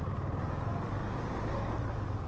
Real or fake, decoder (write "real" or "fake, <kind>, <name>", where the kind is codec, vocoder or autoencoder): real